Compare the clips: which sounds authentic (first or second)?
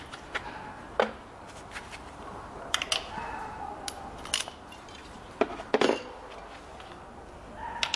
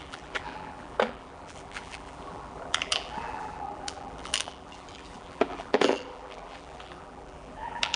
first